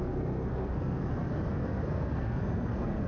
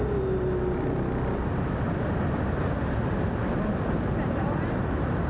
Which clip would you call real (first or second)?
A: second